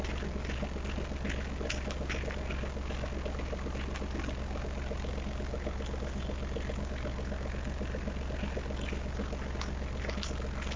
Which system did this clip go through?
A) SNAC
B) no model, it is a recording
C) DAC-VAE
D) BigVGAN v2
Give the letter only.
B